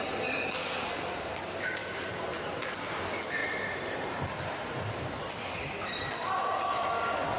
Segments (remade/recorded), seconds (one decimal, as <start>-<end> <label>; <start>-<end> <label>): 0.0-1.8 recorded; 1.8-2.8 remade; 2.8-3.4 recorded; 3.4-5.3 remade; 5.3-7.4 recorded